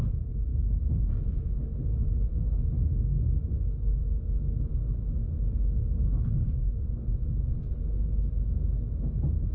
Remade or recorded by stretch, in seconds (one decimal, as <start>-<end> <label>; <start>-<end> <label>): 0.0-9.5 recorded